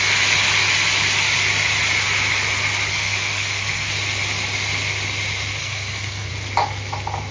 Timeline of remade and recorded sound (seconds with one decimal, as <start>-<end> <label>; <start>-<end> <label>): 0.0-2.9 recorded; 2.9-3.9 remade; 3.9-5.6 recorded; 5.6-6.3 remade; 6.3-7.3 recorded